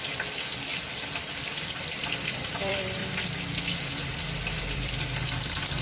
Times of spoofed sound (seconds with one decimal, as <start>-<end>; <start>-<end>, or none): 0.0-0.7; 1.4-3.0; 4.6-5.8